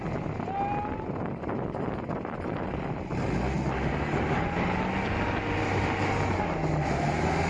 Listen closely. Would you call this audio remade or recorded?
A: recorded